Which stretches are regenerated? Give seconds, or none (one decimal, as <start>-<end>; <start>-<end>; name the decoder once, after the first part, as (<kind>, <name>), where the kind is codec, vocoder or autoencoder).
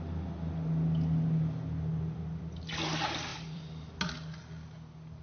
3.3-3.9 (vocoder, BigVGAN v2)